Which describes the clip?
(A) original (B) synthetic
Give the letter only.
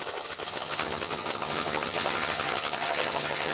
B